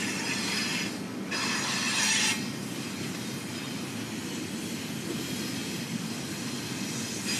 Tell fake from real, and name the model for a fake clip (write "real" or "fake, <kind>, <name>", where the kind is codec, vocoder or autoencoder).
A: real